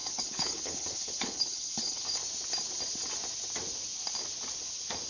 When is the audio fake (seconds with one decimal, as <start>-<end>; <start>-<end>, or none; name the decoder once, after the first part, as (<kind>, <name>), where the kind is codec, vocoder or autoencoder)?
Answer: 0.0-2.2 (codec, HILCodec)